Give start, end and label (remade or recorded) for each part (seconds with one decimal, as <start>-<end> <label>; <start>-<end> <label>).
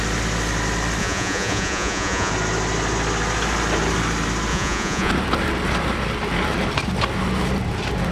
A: 0.0-1.0 recorded; 1.0-2.3 remade; 2.3-4.5 recorded; 4.5-5.1 remade; 5.1-8.1 recorded